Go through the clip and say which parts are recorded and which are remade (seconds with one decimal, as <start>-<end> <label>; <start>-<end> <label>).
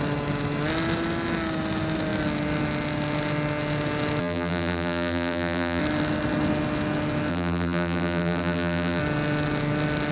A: 0.0-4.2 recorded; 4.2-5.8 remade; 5.8-7.3 recorded; 7.3-9.0 remade; 9.0-10.1 recorded